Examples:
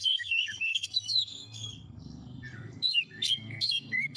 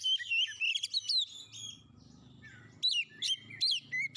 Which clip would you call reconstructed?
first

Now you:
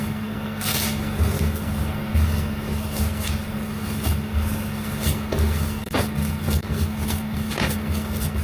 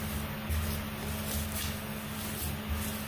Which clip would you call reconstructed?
first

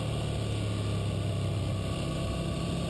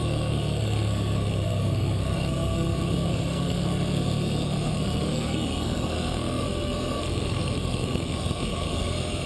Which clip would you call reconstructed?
second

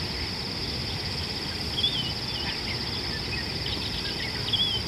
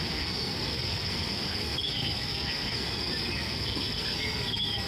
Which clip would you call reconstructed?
second